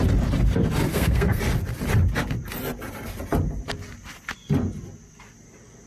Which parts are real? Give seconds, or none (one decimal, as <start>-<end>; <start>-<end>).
0.0-0.9; 1.4-5.9